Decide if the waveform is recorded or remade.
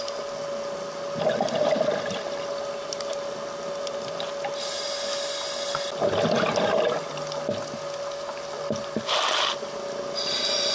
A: recorded